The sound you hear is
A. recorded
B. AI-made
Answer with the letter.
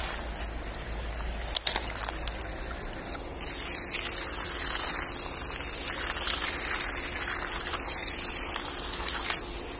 A